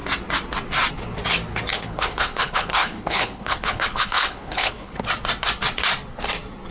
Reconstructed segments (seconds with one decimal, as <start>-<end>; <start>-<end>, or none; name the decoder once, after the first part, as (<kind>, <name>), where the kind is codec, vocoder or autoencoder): 1.7-5.0 (codec, HILCodec)